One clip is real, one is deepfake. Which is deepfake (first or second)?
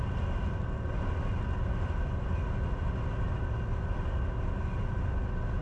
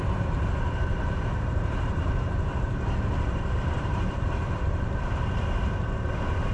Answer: second